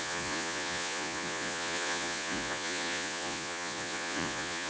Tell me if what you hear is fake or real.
fake